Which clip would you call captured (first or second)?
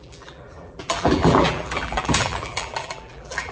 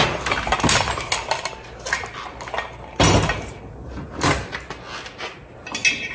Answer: second